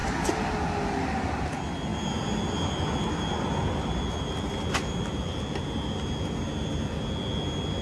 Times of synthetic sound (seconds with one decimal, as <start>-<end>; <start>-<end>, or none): none